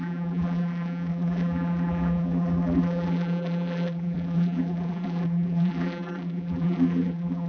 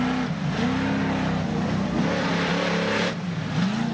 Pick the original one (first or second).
second